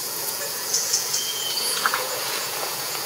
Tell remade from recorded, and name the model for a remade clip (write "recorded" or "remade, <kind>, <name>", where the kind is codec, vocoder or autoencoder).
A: remade, vocoder, Vocos